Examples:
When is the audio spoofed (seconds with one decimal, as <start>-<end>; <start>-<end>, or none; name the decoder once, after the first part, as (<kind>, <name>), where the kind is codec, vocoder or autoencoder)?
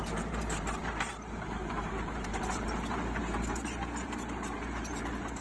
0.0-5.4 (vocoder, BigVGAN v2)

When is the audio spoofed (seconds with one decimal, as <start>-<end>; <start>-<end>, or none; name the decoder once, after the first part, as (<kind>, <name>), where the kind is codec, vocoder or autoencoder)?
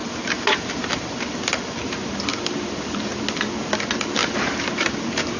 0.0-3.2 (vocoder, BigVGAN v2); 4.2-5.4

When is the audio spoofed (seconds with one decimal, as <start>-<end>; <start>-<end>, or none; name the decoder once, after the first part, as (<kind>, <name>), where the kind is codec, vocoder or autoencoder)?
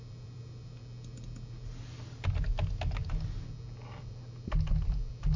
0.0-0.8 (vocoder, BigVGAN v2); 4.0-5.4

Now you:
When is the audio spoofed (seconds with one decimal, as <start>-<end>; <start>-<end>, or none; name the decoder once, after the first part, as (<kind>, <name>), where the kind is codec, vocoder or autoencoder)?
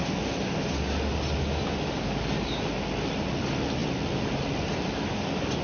3.1-3.8 (vocoder, BigVGAN v2); 4.5-5.6